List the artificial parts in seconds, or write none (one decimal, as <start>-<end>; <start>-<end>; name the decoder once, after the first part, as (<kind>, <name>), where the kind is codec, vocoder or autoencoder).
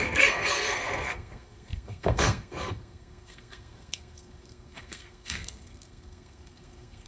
0.0-7.1 (codec, SNAC)